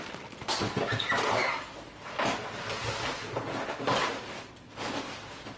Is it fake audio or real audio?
real